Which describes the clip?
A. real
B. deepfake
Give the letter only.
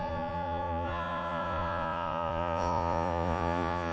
B